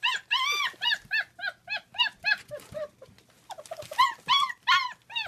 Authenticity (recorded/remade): recorded